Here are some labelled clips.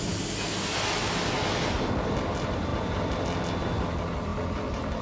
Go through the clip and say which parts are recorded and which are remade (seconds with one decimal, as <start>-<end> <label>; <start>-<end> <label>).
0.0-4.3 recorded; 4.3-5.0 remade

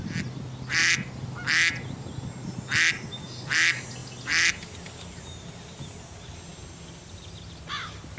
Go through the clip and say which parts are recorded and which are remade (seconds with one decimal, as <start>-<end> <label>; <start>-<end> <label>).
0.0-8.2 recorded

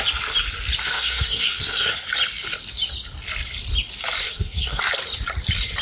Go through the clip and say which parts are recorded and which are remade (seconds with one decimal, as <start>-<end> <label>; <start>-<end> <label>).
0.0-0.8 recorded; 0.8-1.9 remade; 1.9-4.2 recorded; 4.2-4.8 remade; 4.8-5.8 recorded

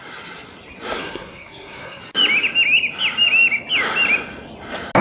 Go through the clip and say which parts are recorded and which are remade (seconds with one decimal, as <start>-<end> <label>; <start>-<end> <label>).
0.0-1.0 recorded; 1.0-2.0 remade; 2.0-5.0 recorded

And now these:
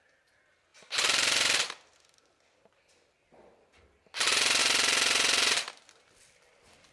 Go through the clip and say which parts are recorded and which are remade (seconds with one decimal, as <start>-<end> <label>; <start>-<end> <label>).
0.0-0.7 recorded; 0.7-4.6 remade; 4.6-6.9 recorded

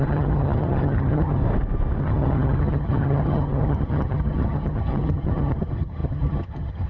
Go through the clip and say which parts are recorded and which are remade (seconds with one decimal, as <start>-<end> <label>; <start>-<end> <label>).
0.0-1.4 remade; 1.4-2.0 recorded; 2.0-6.9 remade